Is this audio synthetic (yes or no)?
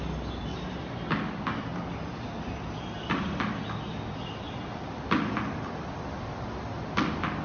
no